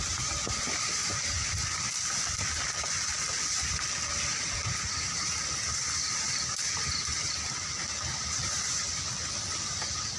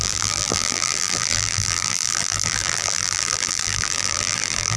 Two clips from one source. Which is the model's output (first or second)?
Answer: second